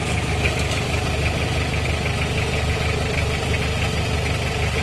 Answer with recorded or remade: recorded